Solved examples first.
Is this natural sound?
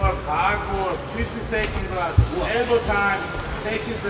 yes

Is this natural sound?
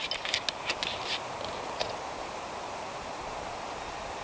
yes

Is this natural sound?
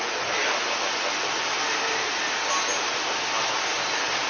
yes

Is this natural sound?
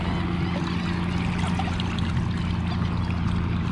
yes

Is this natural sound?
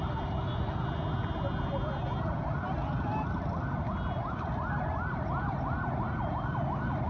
yes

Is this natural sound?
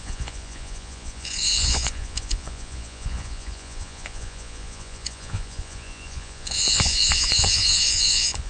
no